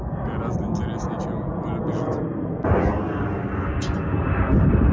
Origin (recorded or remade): recorded